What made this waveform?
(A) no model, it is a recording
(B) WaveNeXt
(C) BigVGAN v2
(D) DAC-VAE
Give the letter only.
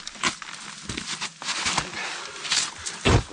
A